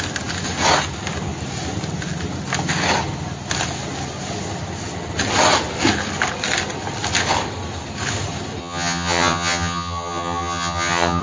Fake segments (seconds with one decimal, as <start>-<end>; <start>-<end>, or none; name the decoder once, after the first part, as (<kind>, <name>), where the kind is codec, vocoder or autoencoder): 8.6-11.2 (vocoder, HiFi-GAN)